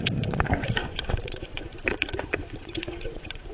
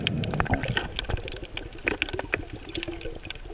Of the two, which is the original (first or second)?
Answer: second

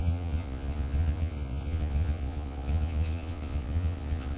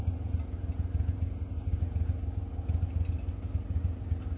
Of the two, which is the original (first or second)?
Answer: second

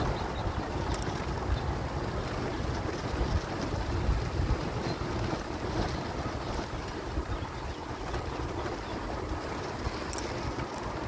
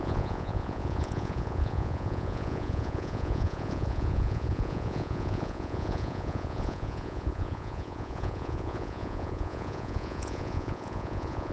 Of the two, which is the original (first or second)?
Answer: first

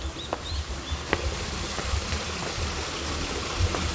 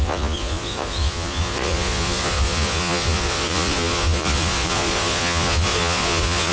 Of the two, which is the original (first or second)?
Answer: first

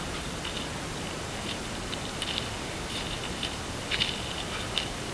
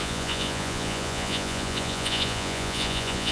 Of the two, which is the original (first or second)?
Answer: first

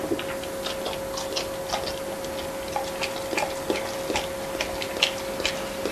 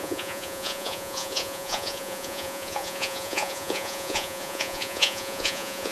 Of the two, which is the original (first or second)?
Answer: first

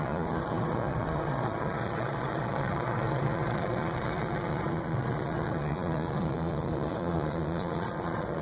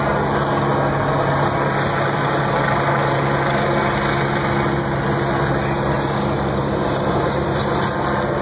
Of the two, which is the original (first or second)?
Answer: second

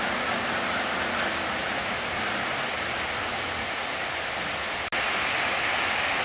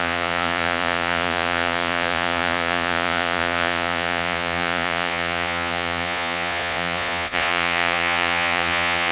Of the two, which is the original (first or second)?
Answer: first